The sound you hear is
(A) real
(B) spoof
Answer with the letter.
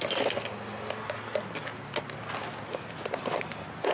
A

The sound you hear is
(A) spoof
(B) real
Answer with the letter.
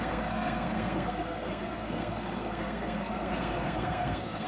A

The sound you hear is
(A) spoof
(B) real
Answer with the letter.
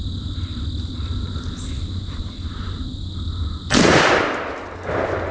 B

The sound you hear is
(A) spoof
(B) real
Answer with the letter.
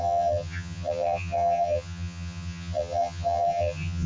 A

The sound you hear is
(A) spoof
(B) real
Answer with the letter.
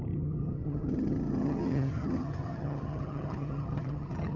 A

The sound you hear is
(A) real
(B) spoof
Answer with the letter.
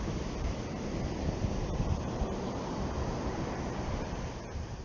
A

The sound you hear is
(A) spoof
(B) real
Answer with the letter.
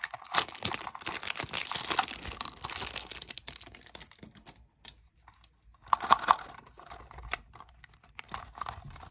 B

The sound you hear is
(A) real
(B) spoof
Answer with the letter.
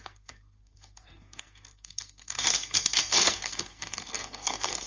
B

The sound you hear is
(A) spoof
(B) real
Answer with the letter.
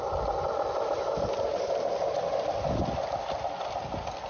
B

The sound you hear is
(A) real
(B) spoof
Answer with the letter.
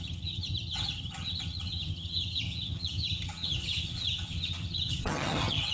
B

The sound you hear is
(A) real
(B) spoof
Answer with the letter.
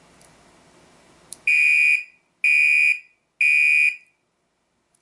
A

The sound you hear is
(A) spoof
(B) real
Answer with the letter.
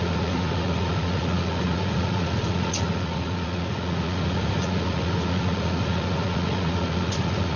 A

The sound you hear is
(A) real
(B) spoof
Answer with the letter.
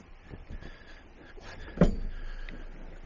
A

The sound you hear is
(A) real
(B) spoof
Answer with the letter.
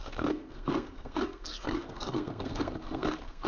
B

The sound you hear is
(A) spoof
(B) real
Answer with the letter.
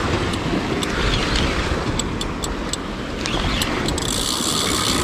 B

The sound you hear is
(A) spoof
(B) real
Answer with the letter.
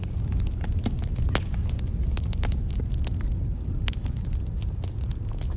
B